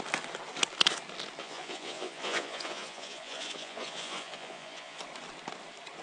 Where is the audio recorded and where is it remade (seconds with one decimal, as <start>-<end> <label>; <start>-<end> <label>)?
0.0-1.4 recorded; 1.4-5.0 remade; 5.0-6.0 recorded

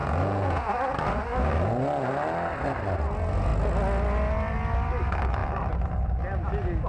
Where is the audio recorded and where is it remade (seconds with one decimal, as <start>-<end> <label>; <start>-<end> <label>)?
0.0-0.7 remade; 0.7-6.9 recorded